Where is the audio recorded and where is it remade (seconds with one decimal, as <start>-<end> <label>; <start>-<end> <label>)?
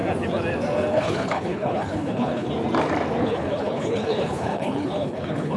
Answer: 0.0-0.9 recorded; 0.9-2.5 remade; 2.5-3.2 recorded; 3.2-5.6 remade